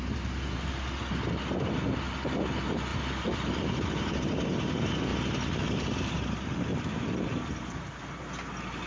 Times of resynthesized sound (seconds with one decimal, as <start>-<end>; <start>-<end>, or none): 2.9-4.1; 6.7-8.2